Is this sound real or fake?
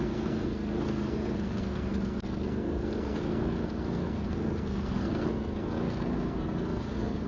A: fake